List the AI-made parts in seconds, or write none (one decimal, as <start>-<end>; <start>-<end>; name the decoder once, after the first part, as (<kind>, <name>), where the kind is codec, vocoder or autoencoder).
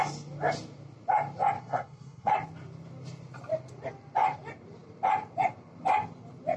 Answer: 1.6-2.3 (codec, SNAC)